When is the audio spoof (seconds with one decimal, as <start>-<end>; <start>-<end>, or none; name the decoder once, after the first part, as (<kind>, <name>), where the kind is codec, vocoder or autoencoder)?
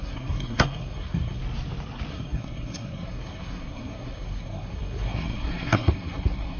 0.0-1.4 (codec, SNAC); 2.1-6.6